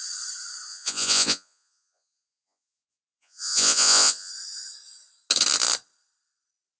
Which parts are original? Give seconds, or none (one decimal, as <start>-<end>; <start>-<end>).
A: 0.0-0.7; 4.3-6.8